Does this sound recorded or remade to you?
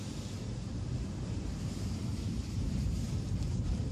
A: remade